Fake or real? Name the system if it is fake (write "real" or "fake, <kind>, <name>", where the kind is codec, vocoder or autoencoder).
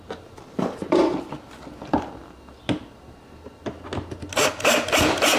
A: real